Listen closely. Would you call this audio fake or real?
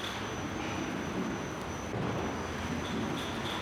real